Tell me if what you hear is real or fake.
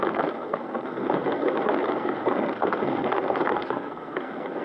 fake